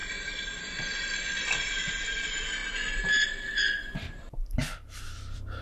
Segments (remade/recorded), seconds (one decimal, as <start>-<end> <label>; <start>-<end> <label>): 0.0-2.6 remade; 2.6-3.9 recorded; 3.9-5.6 remade

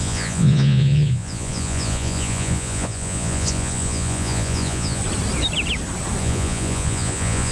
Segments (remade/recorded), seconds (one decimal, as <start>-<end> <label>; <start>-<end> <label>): 0.0-5.0 remade; 5.0-6.2 recorded; 6.2-7.5 remade

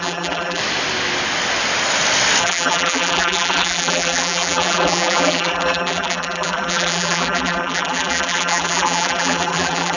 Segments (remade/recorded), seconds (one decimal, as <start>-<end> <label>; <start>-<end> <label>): 0.0-0.6 remade; 0.6-2.4 recorded; 2.4-10.0 remade

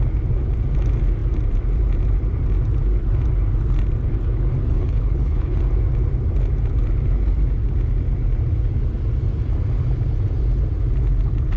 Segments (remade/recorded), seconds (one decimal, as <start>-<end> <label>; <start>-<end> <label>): 0.0-4.7 recorded; 4.7-5.6 remade; 5.6-11.6 recorded

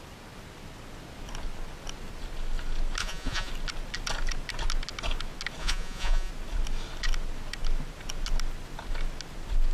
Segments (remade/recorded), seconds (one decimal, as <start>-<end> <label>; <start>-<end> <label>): 0.0-3.0 recorded; 3.0-3.5 remade; 3.5-5.6 recorded; 5.6-6.3 remade; 6.3-9.7 recorded

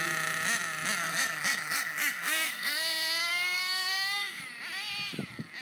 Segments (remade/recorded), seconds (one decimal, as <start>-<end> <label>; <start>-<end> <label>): 0.0-1.0 recorded; 1.0-4.4 remade; 4.4-5.6 recorded

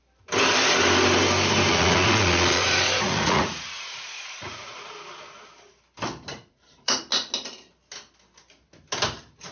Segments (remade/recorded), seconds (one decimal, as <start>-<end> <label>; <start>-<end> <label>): 0.0-1.7 recorded; 1.7-4.9 remade; 4.9-6.3 recorded; 6.3-7.0 remade; 7.0-9.5 recorded